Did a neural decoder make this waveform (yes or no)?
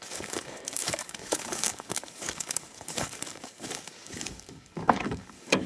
yes